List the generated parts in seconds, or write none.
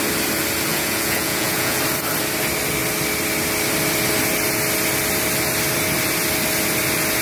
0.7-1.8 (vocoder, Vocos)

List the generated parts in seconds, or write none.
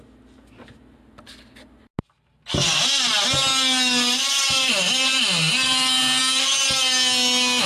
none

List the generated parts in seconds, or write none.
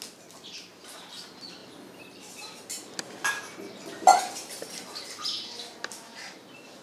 none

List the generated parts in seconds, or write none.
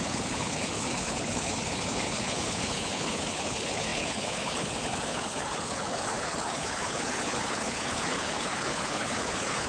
0.0-9.7 (codec, HILCodec)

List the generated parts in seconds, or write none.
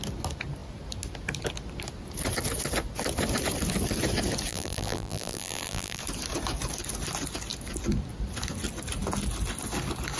4.5-6.0 (vocoder, BigVGAN v2)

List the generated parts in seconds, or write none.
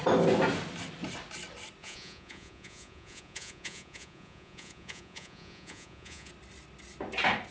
1.8-6.3 (vocoder, Vocos)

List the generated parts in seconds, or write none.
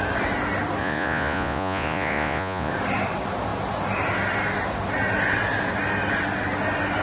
0.8-2.7 (vocoder, Vocos)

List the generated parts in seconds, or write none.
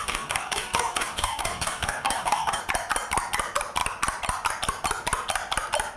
0.0-2.6 (codec, DAC)